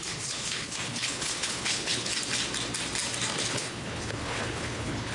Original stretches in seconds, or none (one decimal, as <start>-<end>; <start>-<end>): 2.1-3.4